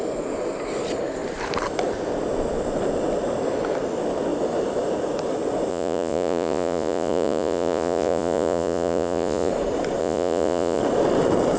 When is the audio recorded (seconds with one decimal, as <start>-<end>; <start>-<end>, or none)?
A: 0.0-5.7; 9.5-10.0; 10.8-11.6